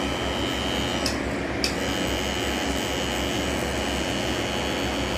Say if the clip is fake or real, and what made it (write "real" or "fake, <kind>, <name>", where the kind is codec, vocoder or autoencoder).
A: real